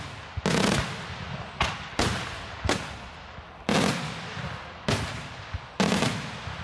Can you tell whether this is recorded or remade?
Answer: recorded